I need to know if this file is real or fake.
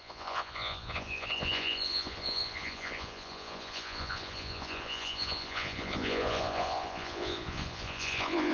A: fake